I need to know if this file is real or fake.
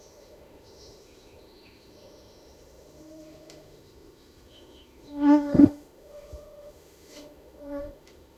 fake